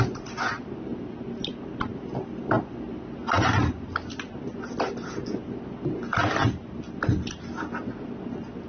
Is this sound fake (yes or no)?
no